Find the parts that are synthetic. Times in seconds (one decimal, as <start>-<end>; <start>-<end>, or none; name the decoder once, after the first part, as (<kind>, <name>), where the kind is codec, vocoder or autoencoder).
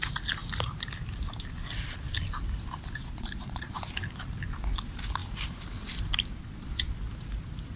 3.0-3.8 (vocoder, Vocos); 6.4-6.9